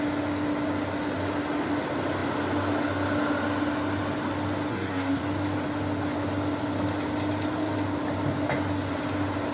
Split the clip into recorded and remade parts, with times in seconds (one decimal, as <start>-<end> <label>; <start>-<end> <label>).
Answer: 0.0-4.7 recorded; 4.7-5.2 remade; 5.2-9.5 recorded